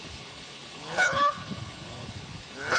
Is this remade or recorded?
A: remade